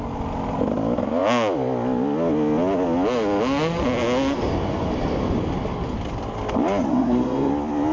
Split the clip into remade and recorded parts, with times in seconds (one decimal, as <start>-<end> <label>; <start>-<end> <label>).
0.0-6.9 recorded; 6.9-7.5 remade; 7.5-7.9 recorded